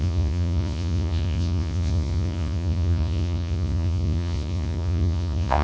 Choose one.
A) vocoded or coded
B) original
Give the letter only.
A